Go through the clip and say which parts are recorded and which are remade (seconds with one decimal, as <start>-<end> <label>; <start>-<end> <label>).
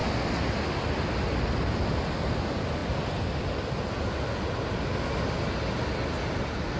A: 0.0-6.8 recorded